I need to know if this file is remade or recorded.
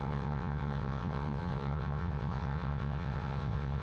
remade